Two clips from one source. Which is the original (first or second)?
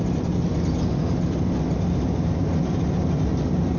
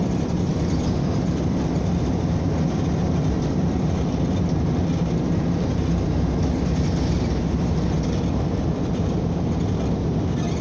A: first